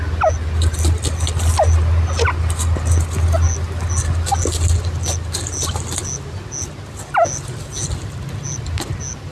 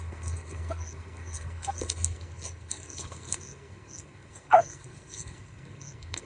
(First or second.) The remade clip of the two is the second